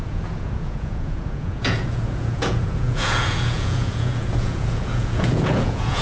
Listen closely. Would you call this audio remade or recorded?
remade